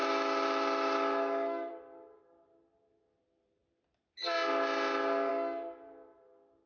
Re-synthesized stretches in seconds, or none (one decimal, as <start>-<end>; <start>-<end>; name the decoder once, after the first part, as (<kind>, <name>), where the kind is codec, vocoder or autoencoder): 0.0-1.7 (autoencoder, DAC-VAE)